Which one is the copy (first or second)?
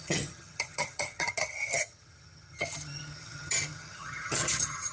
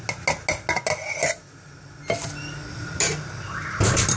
first